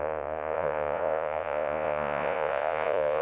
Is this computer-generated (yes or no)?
yes